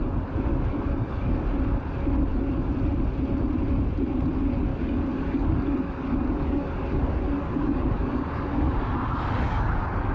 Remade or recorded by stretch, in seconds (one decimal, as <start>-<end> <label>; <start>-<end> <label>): 0.0-0.5 recorded; 0.5-1.4 remade; 1.4-4.7 recorded; 4.7-10.1 remade